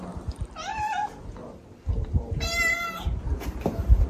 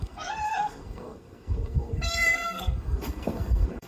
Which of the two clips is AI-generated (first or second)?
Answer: second